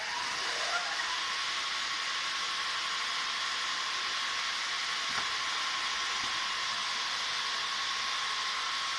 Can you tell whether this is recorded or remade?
recorded